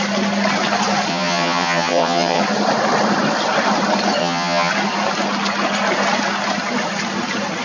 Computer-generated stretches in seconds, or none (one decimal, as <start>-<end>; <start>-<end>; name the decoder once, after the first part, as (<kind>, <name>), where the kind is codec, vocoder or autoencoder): 1.1-2.4 (vocoder, HiFi-GAN); 4.2-4.7